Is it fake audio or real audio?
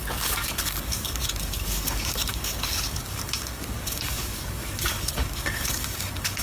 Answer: fake